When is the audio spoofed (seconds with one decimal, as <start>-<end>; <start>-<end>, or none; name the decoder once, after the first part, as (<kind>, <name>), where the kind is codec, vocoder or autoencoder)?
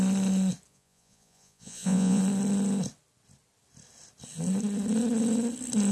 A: 0.7-2.2 (vocoder, Vocos)